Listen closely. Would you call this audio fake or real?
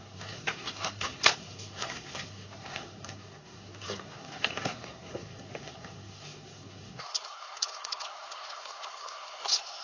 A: fake